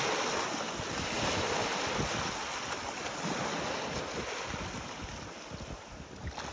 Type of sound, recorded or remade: recorded